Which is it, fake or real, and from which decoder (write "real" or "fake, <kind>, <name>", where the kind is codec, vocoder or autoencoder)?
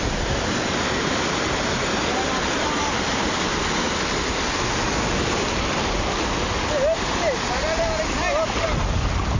real